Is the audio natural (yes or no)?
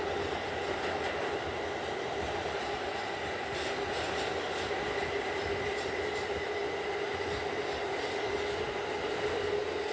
yes